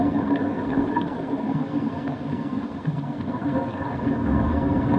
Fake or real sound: fake